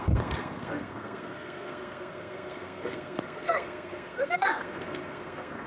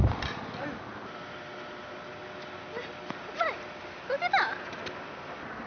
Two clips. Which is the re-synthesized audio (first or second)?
first